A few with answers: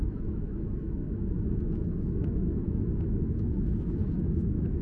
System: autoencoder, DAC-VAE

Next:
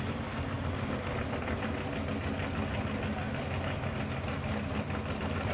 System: none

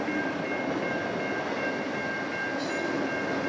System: none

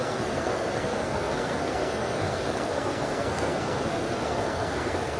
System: codec, SNAC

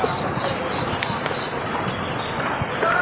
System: none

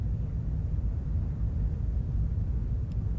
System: none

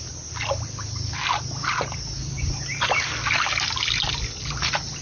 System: none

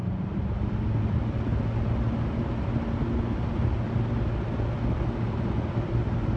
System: none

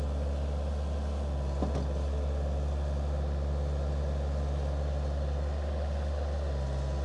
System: none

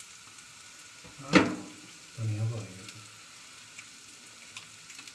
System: none